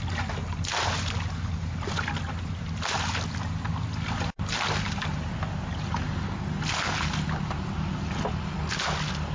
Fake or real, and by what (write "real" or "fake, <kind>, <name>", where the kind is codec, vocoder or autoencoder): real